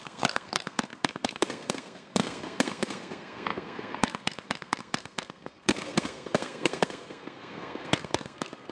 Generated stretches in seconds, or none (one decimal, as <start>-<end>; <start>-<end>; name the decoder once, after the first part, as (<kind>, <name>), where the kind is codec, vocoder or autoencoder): 0.0-8.7 (codec, SNAC)